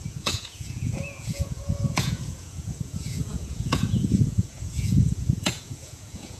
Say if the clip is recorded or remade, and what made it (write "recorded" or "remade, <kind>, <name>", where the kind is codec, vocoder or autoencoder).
remade, vocoder, Vocos